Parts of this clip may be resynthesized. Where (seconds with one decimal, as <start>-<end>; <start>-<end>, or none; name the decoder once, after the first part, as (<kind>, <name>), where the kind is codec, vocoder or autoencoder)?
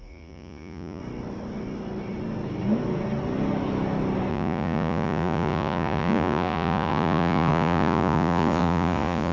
0.0-1.0 (vocoder, Vocos); 4.3-9.3